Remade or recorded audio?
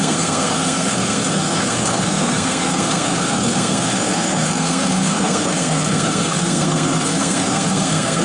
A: remade